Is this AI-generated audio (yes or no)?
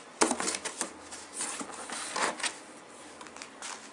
no